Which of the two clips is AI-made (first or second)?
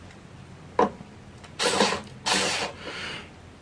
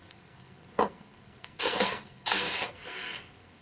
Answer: second